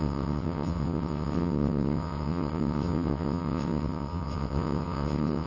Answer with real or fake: fake